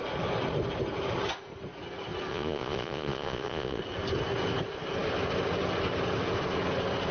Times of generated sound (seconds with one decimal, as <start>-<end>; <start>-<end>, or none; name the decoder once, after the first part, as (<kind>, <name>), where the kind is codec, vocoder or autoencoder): 2.3-3.8 (vocoder, Vocos)